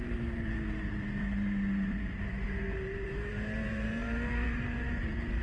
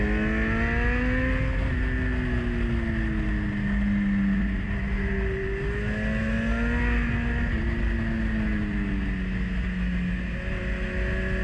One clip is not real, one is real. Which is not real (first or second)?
first